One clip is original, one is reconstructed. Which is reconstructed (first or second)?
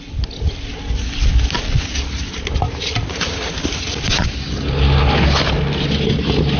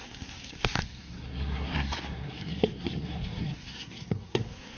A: second